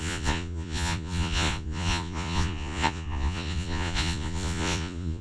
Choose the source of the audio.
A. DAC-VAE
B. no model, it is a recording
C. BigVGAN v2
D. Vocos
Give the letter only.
D